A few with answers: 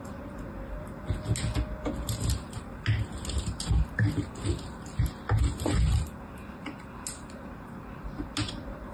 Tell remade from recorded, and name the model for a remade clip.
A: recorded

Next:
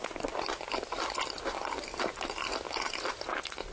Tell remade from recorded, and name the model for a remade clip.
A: recorded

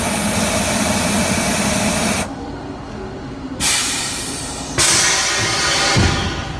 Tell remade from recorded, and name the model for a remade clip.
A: recorded